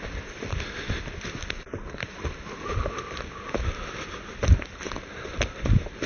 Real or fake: real